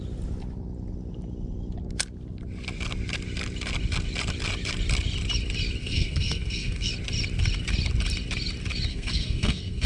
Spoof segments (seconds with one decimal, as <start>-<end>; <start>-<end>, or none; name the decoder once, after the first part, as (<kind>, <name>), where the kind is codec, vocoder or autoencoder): 5.8-6.9 (codec, SNAC); 8.9-9.9